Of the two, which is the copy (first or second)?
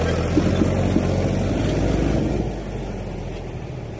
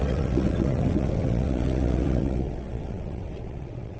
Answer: second